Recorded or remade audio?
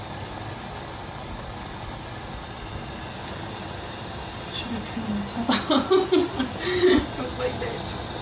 recorded